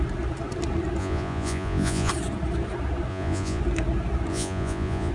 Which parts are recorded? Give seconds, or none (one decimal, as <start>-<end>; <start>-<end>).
0.0-1.0; 2.1-3.1; 3.6-4.3